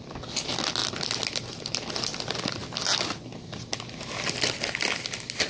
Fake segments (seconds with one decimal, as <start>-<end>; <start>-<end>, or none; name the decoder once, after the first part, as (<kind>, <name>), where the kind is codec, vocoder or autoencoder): none